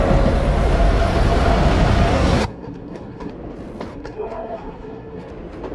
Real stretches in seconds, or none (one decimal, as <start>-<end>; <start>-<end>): 0.0-2.1; 3.3-3.9; 5.3-5.7